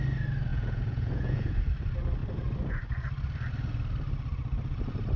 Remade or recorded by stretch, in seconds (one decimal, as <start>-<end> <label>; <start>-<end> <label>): 0.0-0.5 recorded; 0.5-1.6 remade; 1.6-5.2 recorded